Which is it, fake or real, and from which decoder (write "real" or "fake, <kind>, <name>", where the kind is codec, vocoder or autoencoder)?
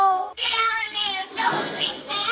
fake, codec, SNAC